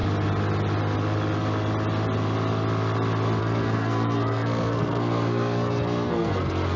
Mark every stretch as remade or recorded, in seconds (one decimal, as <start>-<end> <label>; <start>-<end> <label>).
0.0-3.4 recorded; 3.4-6.8 remade